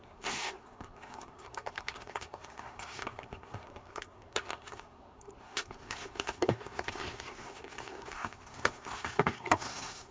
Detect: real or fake fake